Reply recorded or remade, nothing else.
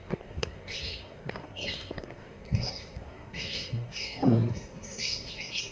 remade